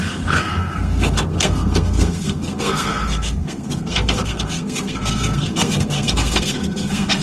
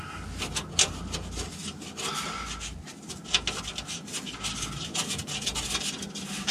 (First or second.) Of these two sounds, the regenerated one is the first